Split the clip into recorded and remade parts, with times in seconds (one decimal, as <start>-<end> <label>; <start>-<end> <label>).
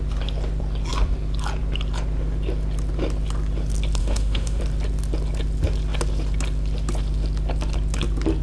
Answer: 0.0-4.0 recorded; 4.0-4.6 remade; 4.6-8.4 recorded